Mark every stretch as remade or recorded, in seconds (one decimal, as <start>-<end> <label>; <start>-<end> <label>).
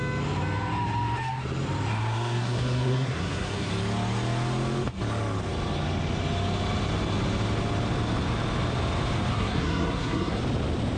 0.0-1.9 recorded; 1.9-3.7 remade; 3.7-9.3 recorded; 9.3-10.4 remade; 10.4-11.0 recorded